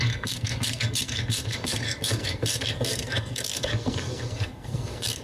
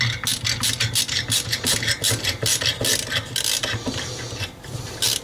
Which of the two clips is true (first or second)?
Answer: second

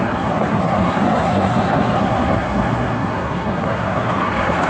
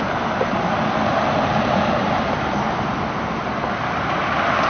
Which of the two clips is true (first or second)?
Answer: second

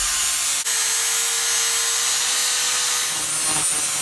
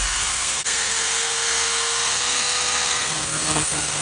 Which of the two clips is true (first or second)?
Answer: first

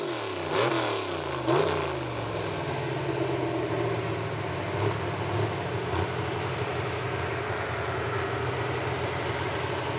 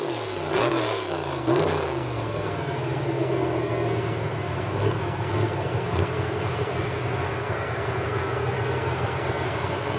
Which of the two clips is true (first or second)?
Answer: first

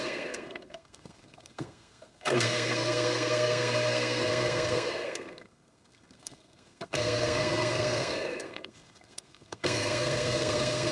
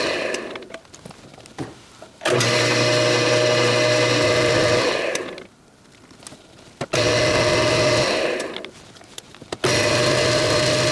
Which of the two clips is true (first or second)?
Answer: second